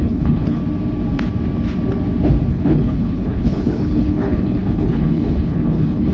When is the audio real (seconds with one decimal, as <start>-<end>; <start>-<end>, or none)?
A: 0.6-2.5